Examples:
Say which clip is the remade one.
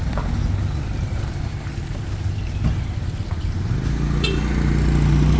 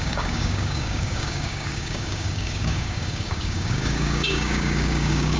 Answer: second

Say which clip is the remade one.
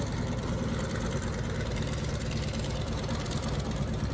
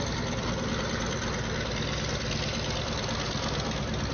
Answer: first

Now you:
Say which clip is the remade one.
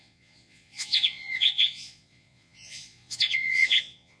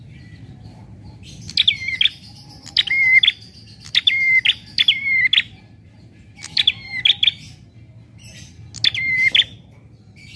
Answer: first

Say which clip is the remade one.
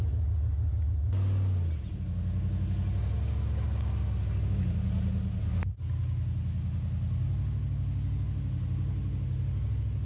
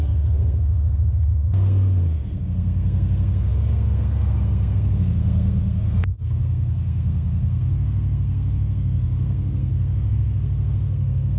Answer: second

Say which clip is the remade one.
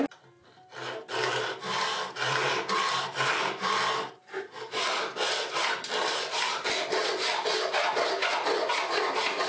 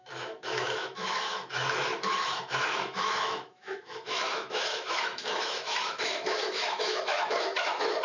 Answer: second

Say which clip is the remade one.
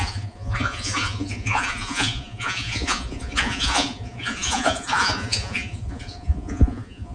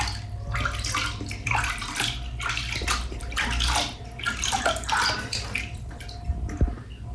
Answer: first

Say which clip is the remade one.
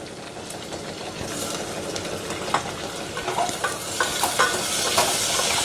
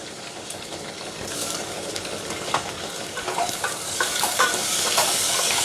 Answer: second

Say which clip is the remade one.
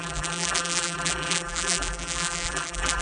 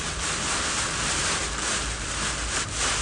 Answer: first